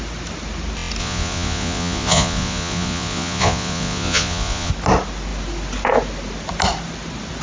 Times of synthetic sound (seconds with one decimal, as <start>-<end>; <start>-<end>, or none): 1.0-4.7